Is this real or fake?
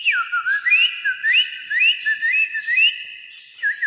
real